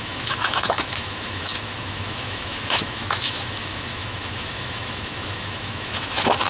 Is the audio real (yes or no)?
no